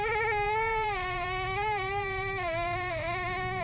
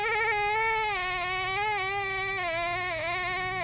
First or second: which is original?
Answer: second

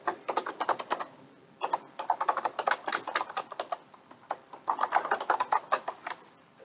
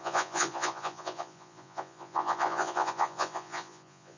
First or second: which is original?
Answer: first